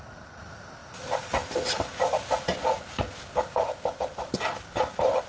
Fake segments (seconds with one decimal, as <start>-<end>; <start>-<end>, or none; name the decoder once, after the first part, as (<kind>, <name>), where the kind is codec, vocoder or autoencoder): none